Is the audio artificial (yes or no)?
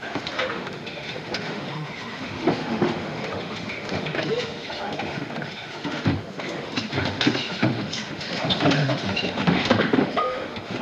yes